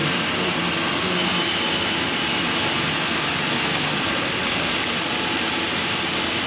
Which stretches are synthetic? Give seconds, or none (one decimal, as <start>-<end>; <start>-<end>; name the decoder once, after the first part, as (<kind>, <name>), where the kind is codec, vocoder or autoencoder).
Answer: 0.0-0.7 (vocoder, BigVGAN v2)